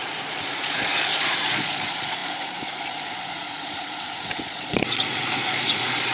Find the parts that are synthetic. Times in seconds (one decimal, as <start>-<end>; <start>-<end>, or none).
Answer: 0.0-6.1